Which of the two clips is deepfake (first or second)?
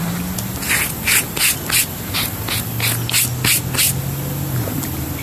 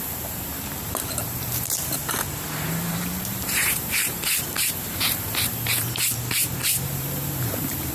second